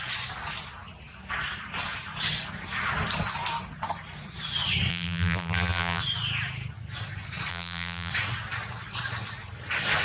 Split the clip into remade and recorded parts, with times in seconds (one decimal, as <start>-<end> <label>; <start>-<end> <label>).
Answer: 0.0-4.9 recorded; 4.9-6.0 remade; 6.0-7.5 recorded; 7.5-8.1 remade; 8.1-10.0 recorded